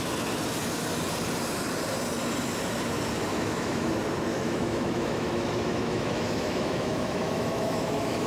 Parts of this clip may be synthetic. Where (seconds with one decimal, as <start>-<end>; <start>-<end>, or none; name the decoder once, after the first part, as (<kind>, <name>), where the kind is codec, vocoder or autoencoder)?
3.3-3.9 (autoencoder, DAC-VAE); 4.3-8.3